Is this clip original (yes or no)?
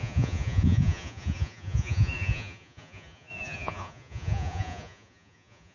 no